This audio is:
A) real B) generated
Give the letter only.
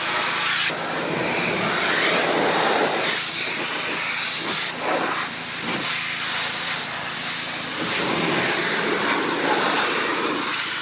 A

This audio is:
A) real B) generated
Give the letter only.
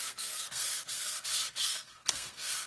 B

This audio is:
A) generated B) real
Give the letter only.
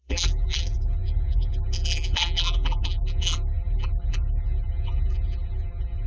A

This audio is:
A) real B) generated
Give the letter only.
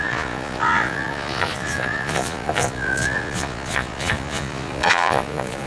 B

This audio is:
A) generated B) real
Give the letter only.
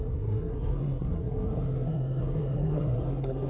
A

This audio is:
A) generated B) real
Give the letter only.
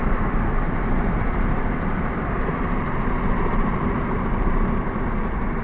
A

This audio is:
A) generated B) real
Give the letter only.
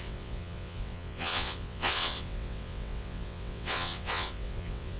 A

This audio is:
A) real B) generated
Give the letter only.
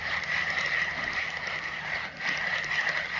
A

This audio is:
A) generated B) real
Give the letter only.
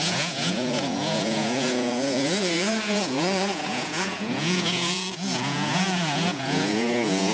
A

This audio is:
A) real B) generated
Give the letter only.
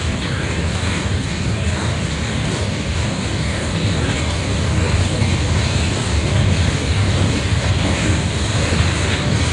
B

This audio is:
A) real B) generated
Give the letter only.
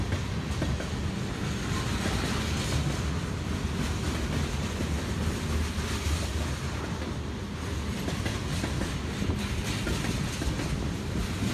A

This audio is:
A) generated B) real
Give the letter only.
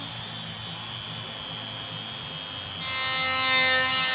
B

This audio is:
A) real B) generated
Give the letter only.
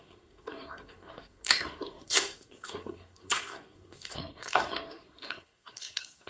B